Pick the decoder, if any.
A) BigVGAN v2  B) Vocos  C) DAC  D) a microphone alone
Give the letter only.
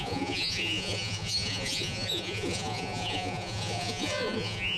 B